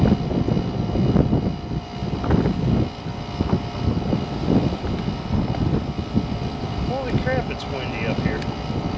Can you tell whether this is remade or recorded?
recorded